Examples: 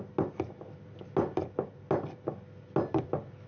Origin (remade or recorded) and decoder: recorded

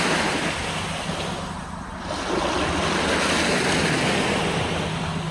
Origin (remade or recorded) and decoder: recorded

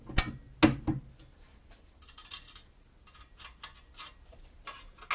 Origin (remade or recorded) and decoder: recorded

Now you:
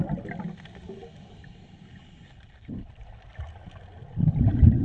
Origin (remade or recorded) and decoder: recorded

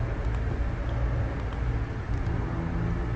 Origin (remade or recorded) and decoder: recorded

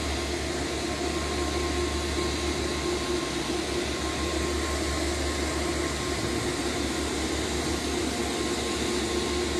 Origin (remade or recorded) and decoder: recorded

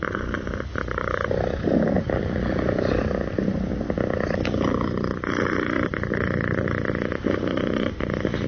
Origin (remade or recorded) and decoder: recorded